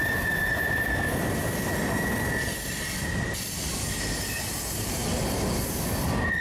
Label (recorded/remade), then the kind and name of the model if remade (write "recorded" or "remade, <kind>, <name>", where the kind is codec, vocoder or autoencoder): recorded